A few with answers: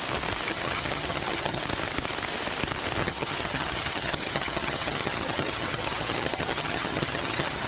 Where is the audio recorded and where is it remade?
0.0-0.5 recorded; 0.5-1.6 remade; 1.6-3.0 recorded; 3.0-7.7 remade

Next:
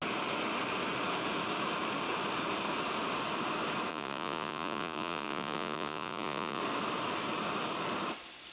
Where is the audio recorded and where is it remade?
0.0-3.9 recorded; 3.9-6.6 remade; 6.6-8.5 recorded